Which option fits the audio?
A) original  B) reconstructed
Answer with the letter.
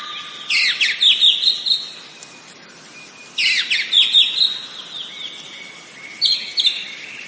B